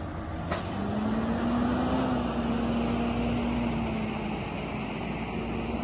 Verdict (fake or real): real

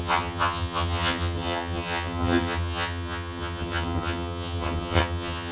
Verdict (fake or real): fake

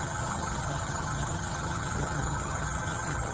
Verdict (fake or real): fake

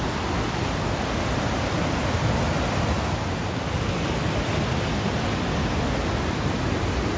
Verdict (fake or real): real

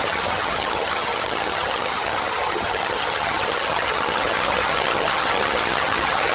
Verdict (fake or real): fake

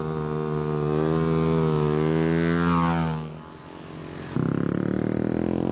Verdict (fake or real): real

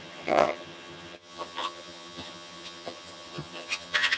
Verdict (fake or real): fake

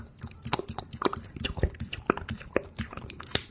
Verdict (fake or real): real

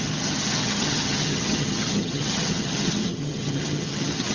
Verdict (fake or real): fake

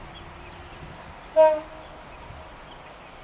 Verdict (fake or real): real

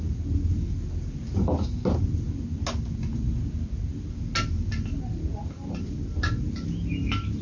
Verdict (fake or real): real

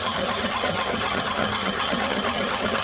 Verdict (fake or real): fake